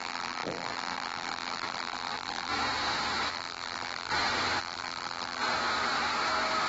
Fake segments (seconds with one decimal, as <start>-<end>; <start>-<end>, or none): 0.0-2.5; 3.3-4.1; 4.6-5.4